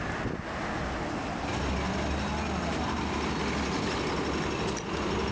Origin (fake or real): real